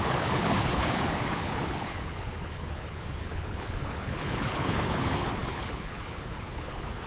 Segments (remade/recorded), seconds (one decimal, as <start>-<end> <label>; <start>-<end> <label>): 0.0-7.1 remade